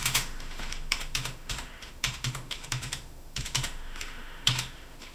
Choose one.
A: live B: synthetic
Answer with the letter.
B